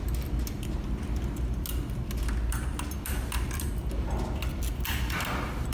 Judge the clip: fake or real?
real